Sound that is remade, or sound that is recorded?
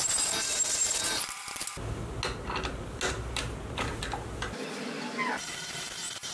recorded